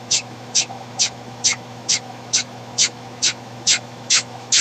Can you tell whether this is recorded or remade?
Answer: remade